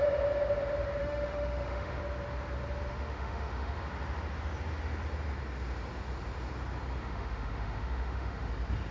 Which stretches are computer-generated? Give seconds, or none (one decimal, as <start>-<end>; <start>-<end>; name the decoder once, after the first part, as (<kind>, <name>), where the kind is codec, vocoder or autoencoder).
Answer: 1.0-2.0 (autoencoder, DAC-VAE); 2.9-3.8; 7.0-8.5